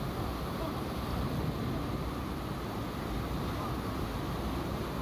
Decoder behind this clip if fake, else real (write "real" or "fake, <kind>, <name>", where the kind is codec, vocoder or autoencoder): real